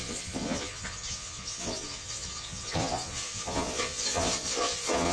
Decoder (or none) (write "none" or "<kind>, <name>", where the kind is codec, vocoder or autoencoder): vocoder, Vocos